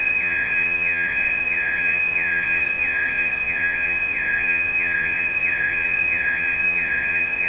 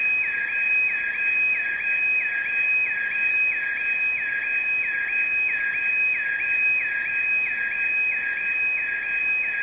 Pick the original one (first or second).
second